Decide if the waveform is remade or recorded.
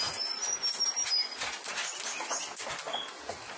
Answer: recorded